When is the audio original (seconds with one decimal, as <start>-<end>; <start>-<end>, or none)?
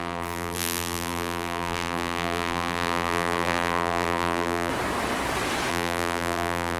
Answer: 4.7-5.7